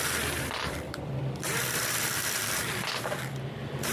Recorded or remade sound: remade